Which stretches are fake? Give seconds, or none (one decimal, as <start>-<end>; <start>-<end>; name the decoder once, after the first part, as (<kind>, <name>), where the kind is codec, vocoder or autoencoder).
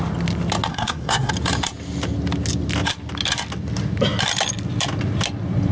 0.7-1.3 (codec, SNAC)